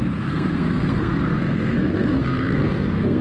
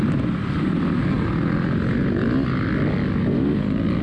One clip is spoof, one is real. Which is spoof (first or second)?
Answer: first